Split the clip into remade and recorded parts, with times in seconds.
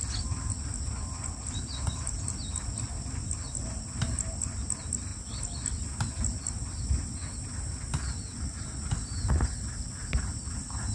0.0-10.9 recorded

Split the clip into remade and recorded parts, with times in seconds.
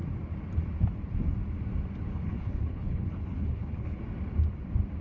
0.0-2.1 recorded; 2.1-4.0 remade; 4.0-5.0 recorded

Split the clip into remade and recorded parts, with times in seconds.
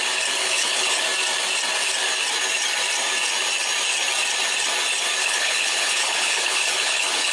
0.0-0.4 recorded; 0.4-1.0 remade; 1.0-5.2 recorded; 5.2-7.3 remade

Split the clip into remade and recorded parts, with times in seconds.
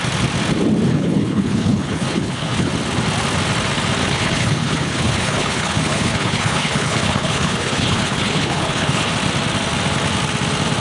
0.0-0.9 recorded; 0.9-2.7 remade; 2.7-4.0 recorded; 4.0-9.1 remade; 9.1-10.8 recorded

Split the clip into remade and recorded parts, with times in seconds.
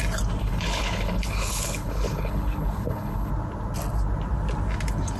0.0-0.4 recorded; 0.4-3.3 remade; 3.3-5.2 recorded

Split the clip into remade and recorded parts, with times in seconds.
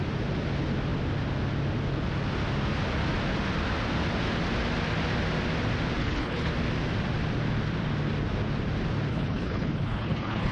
0.0-6.0 recorded; 6.0-6.5 remade; 6.5-9.1 recorded; 9.1-10.5 remade